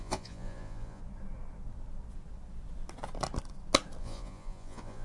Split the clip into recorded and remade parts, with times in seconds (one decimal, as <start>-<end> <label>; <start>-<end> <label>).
0.0-1.0 remade; 1.0-4.0 recorded; 4.0-5.0 remade